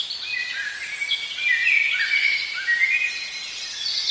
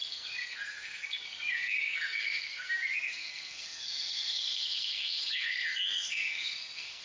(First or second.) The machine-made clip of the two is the second